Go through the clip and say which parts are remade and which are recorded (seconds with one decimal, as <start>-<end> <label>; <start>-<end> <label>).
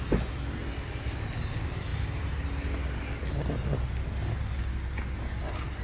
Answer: 0.0-5.8 recorded